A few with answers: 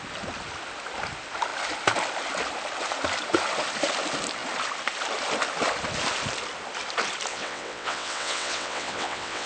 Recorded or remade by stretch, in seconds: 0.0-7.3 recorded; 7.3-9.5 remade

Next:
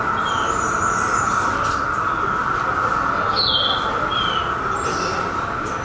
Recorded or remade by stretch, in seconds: 0.0-5.8 recorded

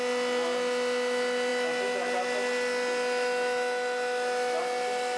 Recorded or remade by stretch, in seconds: 0.0-5.2 recorded

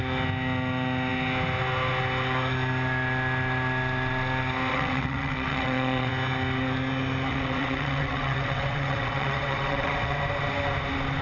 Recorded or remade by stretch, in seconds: 0.0-4.7 recorded; 4.7-6.1 remade; 6.1-7.3 recorded; 7.3-10.2 remade; 10.2-11.2 recorded